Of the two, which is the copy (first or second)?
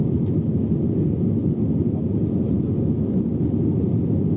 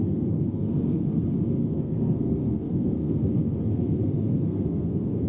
second